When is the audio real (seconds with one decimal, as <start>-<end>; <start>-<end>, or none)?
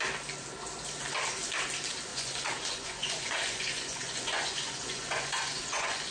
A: 0.0-2.1